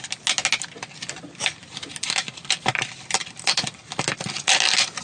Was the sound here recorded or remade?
recorded